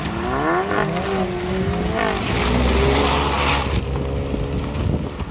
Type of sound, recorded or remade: recorded